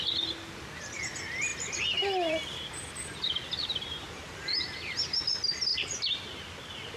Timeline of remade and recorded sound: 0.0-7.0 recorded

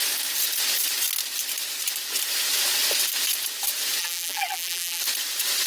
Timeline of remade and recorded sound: 0.0-4.0 recorded; 4.0-5.0 remade; 5.0-5.7 recorded

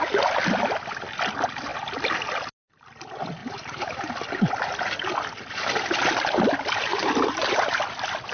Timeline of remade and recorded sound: 0.0-3.4 recorded; 3.4-4.1 remade; 4.1-6.9 recorded; 6.9-7.8 remade; 7.8-8.3 recorded